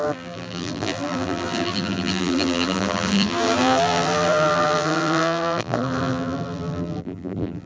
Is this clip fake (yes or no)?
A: yes